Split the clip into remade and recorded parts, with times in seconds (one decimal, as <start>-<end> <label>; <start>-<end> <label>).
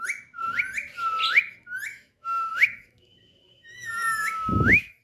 0.0-1.9 recorded; 1.9-5.0 remade